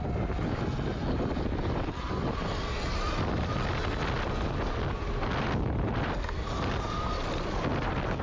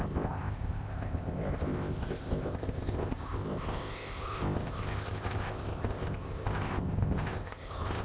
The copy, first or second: second